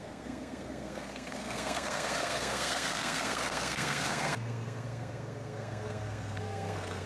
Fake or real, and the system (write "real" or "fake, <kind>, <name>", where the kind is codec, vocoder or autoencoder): fake, codec, SNAC